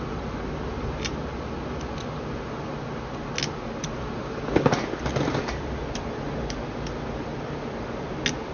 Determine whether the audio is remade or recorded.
recorded